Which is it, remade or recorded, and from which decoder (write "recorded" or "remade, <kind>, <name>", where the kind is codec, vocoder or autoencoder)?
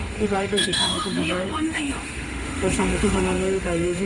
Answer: remade, autoencoder, DAC-VAE